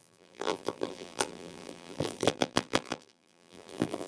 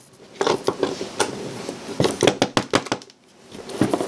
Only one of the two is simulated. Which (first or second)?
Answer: first